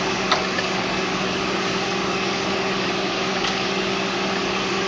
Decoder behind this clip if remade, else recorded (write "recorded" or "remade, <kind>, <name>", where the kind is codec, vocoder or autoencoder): remade, codec, DAC